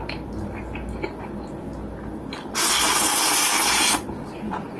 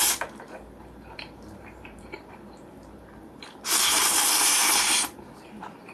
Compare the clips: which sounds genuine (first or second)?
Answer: first